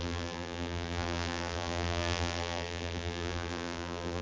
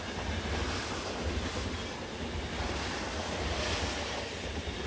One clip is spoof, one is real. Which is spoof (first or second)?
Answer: first